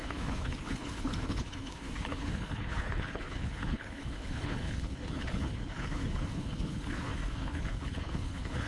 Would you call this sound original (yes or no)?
no